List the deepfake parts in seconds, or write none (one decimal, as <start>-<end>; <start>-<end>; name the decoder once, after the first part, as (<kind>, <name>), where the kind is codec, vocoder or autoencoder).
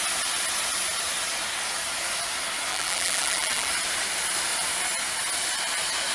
2.7-3.7 (vocoder, BigVGAN v2)